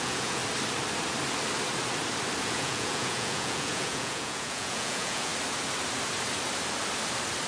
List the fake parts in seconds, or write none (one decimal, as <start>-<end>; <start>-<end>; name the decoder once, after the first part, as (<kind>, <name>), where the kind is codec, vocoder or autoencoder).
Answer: 0.0-0.4 (vocoder, Vocos); 2.4-5.3